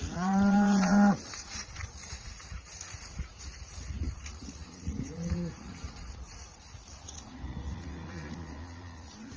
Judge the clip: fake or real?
fake